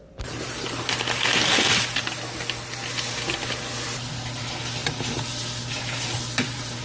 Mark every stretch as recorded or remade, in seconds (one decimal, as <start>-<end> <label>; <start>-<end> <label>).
0.0-6.8 recorded